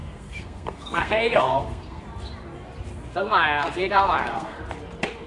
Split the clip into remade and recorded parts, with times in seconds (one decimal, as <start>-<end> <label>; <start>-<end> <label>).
0.0-2.0 remade; 2.0-3.1 recorded; 3.1-4.6 remade; 4.6-5.3 recorded